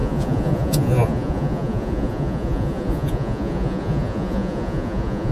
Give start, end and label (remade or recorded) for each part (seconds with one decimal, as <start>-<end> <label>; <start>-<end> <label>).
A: 0.0-5.3 remade